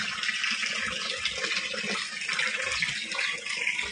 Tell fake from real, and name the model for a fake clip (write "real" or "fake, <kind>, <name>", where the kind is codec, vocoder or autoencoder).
real